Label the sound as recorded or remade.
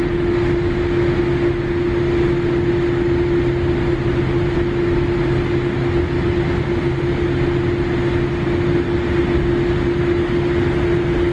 recorded